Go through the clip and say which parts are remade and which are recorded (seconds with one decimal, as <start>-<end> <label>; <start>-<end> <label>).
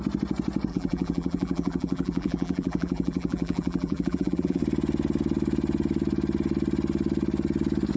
0.0-0.7 recorded; 0.7-4.6 remade; 4.6-8.0 recorded